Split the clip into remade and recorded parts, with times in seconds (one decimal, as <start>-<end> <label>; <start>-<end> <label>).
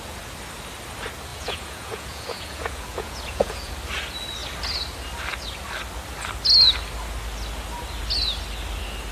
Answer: 0.0-1.3 recorded; 1.3-3.7 remade; 3.7-9.1 recorded